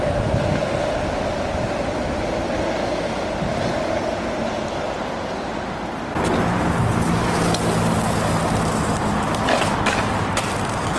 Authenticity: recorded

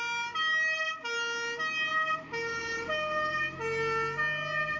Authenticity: recorded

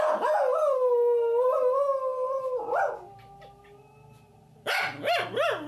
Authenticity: recorded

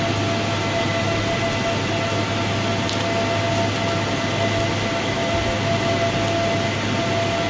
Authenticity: recorded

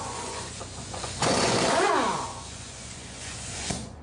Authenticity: remade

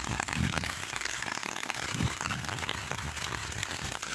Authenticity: remade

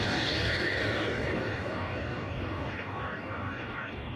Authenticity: remade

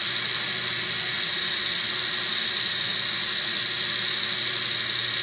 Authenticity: recorded